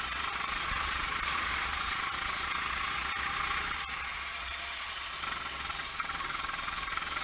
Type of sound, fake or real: fake